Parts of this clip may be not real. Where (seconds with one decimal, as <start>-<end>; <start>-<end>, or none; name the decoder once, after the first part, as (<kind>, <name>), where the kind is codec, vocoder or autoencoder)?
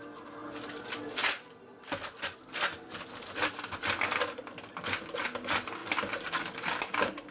none